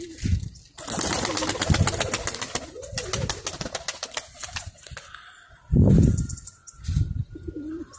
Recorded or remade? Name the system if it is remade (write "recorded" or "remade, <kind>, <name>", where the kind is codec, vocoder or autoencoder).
recorded